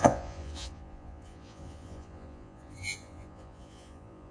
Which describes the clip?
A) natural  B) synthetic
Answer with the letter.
B